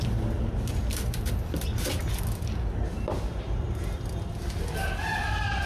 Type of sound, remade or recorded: recorded